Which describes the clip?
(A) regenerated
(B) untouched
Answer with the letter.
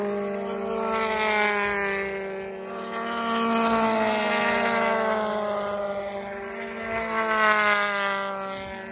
B